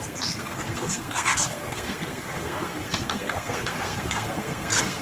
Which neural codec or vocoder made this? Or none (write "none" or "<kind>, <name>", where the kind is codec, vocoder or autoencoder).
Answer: codec, SNAC